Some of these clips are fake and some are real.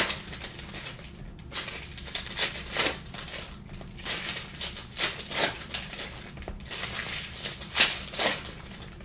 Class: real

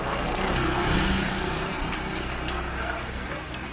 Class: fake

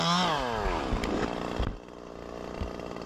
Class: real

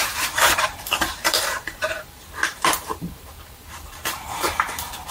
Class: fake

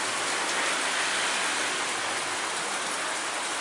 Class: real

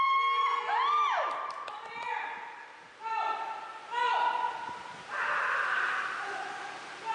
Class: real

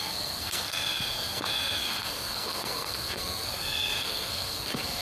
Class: fake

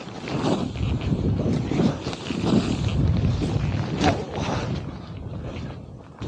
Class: real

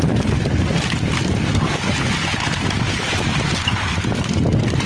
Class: real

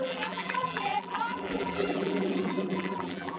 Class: fake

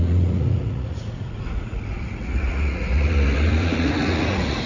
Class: fake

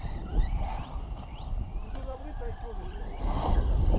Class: fake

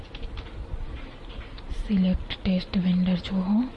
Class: real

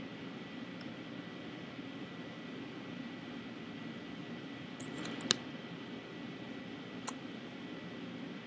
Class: fake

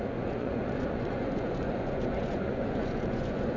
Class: fake